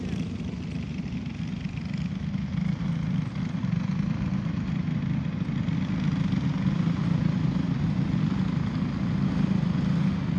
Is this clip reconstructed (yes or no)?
no